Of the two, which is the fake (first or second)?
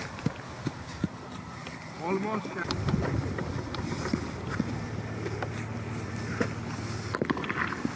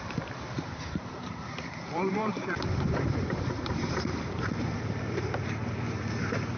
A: second